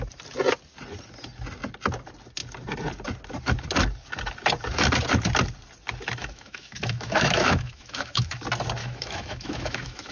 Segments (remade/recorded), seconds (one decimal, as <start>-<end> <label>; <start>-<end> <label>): 0.0-6.2 recorded; 6.2-8.4 remade; 8.4-8.8 recorded; 8.8-10.1 remade